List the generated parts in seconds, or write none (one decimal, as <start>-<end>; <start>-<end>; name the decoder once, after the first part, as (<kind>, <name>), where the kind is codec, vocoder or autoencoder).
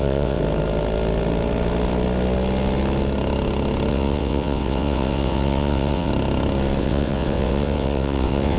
0.0-0.4 (vocoder, WaveNeXt); 3.9-6.1; 6.8-8.6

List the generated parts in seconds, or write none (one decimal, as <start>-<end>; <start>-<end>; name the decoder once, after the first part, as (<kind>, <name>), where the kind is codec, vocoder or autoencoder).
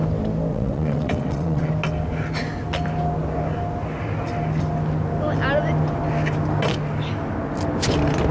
0.5-1.7 (vocoder, WaveNeXt)